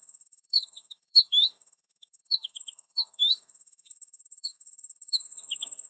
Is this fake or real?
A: fake